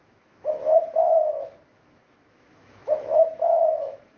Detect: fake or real fake